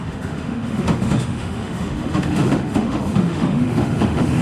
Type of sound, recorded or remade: remade